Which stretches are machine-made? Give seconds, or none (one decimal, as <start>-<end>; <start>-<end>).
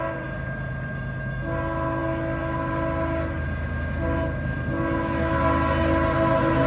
none